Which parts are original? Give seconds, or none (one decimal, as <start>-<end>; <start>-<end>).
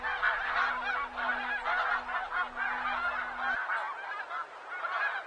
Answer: 0.0-5.3